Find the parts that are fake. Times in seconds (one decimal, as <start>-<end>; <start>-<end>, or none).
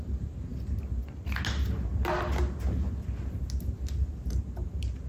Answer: none